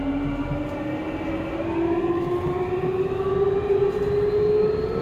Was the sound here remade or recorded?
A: recorded